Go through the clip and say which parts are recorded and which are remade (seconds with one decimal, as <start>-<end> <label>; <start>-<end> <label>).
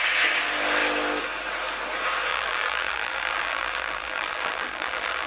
0.0-2.3 recorded; 2.3-5.3 remade